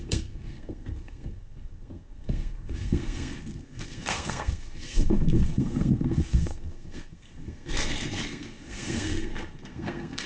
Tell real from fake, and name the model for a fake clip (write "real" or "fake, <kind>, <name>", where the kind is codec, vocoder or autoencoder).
fake, codec, SNAC